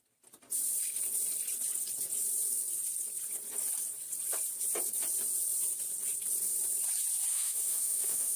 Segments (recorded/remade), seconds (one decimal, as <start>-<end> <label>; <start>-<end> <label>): 0.0-7.3 recorded; 7.3-8.4 remade